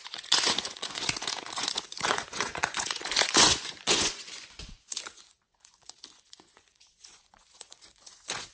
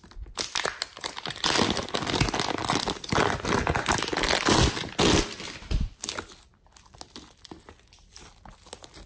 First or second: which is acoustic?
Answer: second